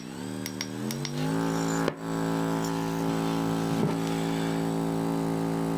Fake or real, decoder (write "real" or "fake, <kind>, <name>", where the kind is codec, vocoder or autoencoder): real